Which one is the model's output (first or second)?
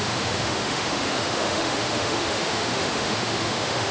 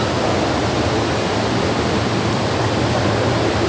first